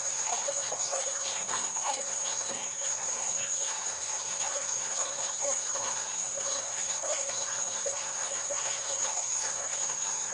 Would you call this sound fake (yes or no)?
yes